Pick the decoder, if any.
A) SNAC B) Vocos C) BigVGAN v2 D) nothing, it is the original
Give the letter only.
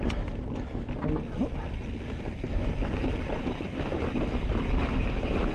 C